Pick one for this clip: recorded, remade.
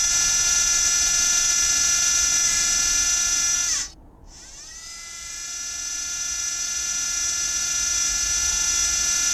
remade